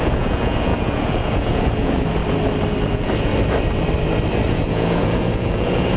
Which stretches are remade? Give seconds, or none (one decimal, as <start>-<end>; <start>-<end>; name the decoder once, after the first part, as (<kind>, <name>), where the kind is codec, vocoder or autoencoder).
0.0-2.2 (vocoder, Vocos); 2.9-3.3; 4.5-6.0

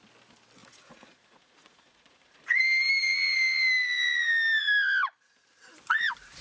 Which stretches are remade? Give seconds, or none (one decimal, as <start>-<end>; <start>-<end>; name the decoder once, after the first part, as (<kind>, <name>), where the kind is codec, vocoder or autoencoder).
0.6-2.6 (vocoder, Vocos)